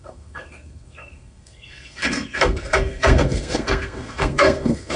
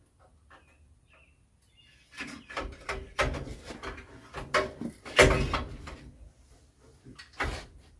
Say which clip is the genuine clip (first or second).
second